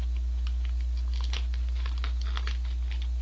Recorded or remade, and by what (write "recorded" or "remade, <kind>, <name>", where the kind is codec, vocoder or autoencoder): recorded